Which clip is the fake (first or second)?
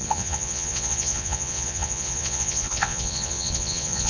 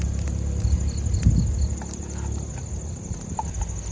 first